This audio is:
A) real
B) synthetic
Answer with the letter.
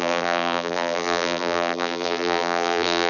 B